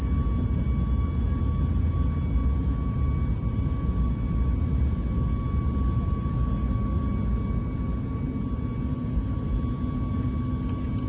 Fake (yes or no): no